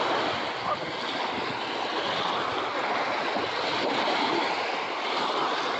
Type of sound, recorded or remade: recorded